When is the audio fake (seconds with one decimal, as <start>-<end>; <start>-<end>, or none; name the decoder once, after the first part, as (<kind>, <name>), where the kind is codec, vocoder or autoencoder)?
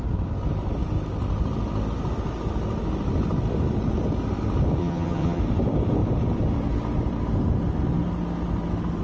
4.8-5.4 (vocoder, HiFi-GAN)